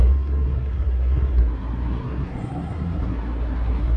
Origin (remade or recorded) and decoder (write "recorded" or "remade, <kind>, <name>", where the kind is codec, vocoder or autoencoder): remade, codec, SNAC